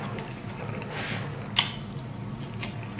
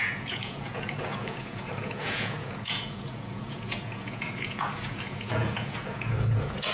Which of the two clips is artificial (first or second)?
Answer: second